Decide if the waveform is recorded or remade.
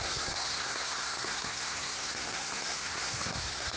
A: remade